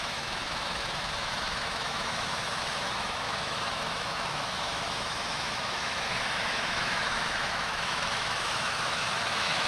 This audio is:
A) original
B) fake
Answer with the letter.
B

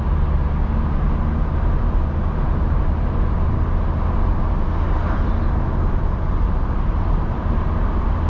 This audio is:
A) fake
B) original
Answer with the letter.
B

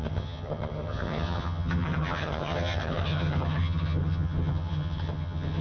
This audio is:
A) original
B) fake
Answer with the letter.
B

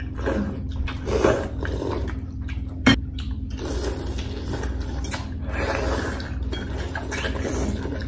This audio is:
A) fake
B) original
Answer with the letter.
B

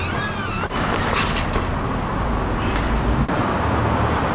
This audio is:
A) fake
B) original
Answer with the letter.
B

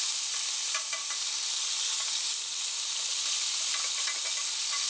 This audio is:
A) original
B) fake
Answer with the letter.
A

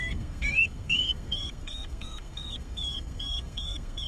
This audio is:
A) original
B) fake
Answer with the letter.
B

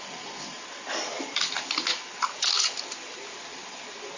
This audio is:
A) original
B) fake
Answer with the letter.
A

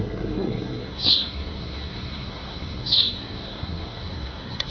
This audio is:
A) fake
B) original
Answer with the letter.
A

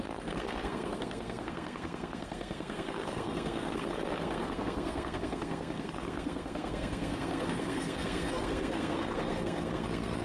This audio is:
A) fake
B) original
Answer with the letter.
A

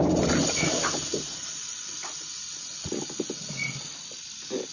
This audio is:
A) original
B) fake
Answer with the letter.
A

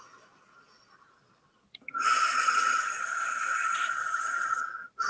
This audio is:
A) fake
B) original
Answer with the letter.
B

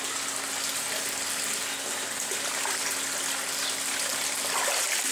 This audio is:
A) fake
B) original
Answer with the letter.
B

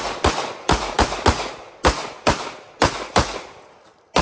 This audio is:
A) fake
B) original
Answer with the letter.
B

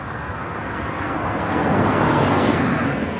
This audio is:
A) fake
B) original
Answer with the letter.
A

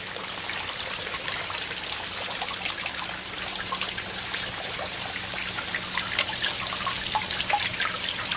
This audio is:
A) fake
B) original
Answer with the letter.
B